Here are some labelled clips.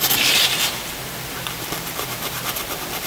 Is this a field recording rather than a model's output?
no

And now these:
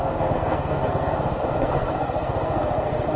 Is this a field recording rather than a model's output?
no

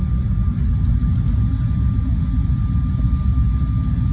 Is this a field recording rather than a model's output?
yes